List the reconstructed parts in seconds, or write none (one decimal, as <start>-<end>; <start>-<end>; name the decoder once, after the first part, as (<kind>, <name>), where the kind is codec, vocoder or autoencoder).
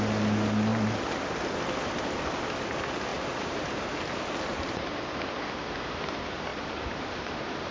3.1-4.0 (vocoder, BigVGAN v2); 4.5-5.2; 6.5-7.7